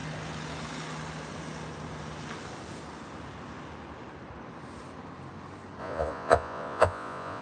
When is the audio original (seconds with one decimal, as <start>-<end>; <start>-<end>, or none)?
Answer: 0.0-5.8